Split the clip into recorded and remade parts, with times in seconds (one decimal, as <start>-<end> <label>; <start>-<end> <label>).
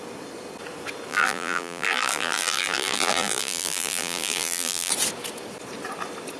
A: 0.0-1.1 recorded; 1.1-4.9 remade; 4.9-6.4 recorded